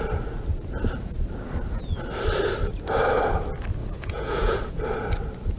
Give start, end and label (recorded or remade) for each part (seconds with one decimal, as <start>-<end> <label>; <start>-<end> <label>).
0.0-3.8 recorded; 3.8-4.8 remade; 4.8-5.6 recorded